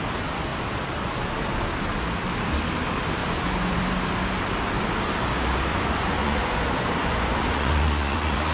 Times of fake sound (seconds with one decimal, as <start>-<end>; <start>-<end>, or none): 3.2-3.8; 5.7-8.5